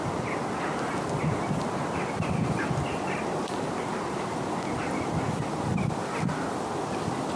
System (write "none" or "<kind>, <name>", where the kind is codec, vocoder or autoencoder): none